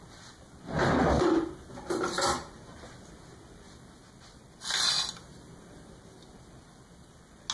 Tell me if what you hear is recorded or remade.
recorded